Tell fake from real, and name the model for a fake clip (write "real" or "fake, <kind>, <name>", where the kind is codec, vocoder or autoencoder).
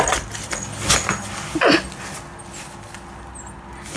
real